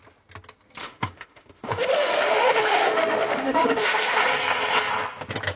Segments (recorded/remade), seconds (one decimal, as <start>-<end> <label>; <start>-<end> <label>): 0.0-0.8 recorded; 0.8-4.2 remade; 4.2-5.6 recorded